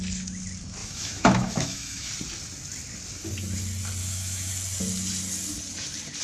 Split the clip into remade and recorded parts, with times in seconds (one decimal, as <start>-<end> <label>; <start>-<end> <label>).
0.0-0.8 recorded; 0.8-2.1 remade; 2.1-4.0 recorded; 4.0-4.5 remade; 4.5-6.2 recorded